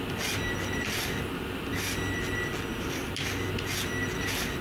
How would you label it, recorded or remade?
recorded